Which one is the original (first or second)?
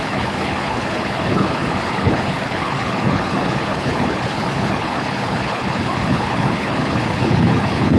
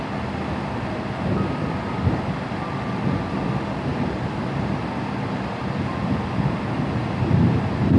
second